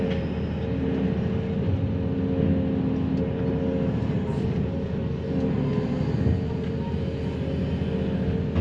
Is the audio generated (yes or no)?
no